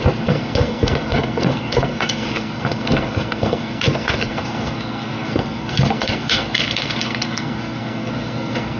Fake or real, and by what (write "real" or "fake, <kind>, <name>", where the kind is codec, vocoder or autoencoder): fake, codec, SNAC